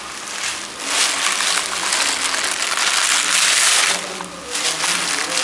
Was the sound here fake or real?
real